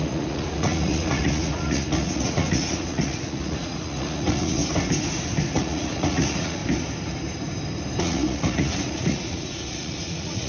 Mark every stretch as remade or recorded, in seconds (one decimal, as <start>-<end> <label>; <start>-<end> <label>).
0.0-4.6 remade; 4.6-5.5 recorded; 5.5-6.6 remade; 6.6-8.0 recorded; 8.0-10.5 remade